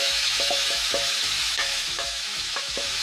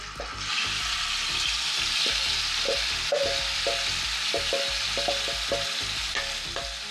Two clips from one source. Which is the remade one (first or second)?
first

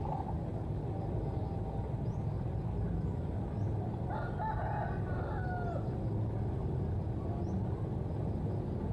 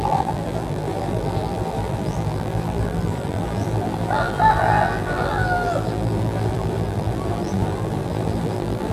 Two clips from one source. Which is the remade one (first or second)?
second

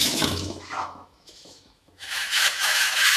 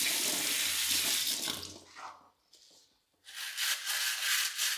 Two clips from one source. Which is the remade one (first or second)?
first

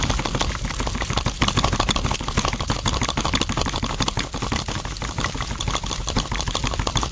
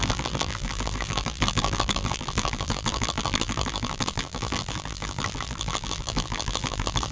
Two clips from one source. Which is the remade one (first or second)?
second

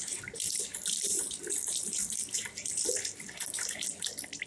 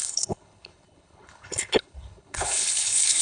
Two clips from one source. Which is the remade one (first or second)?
second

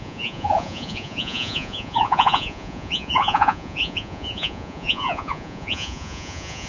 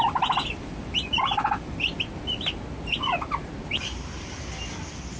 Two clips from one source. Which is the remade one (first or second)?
first